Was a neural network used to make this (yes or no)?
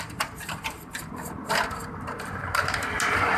yes